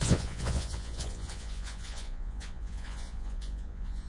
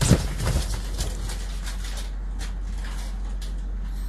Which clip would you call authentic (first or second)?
second